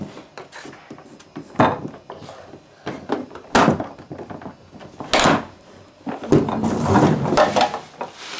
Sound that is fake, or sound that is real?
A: real